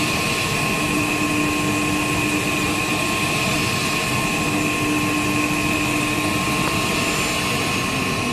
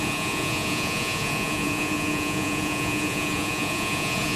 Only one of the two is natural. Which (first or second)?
first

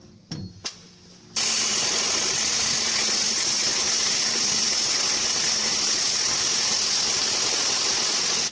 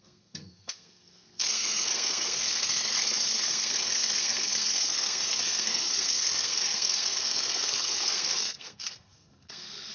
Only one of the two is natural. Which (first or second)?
first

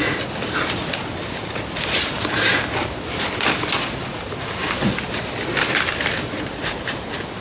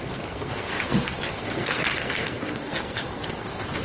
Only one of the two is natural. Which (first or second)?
first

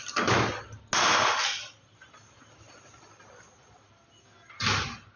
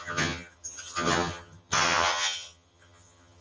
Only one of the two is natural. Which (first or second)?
first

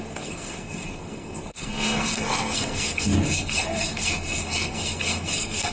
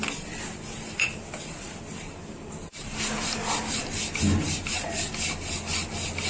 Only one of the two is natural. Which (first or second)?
second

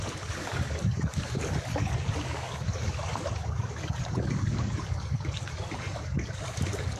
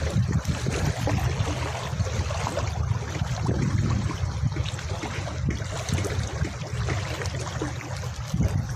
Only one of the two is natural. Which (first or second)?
second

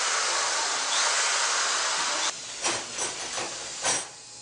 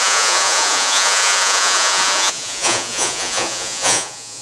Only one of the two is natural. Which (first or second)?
first